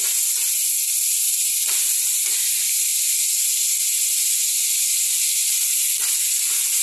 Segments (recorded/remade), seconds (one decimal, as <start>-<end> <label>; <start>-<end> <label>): 0.0-6.8 recorded